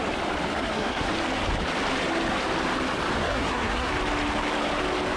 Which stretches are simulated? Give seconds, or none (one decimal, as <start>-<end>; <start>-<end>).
0.5-1.1; 3.2-3.9